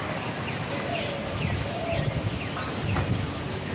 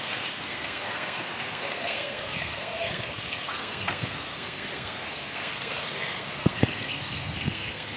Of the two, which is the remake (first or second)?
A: second